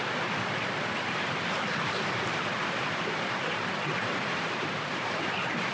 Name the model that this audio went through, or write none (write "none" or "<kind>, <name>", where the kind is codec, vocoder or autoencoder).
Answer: vocoder, BigVGAN v2